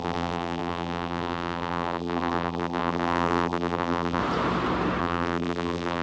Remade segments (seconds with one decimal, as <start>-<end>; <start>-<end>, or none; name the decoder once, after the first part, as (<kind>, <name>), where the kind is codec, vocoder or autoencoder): 0.0-4.2 (vocoder, BigVGAN v2); 5.0-6.0